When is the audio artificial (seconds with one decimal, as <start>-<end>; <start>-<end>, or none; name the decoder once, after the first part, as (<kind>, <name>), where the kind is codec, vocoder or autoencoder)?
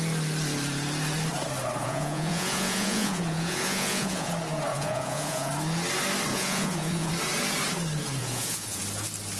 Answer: 1.8-4.3 (vocoder, Vocos); 4.7-5.5; 6.3-7.1; 8.2-8.8